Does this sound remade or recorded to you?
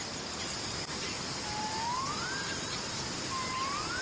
recorded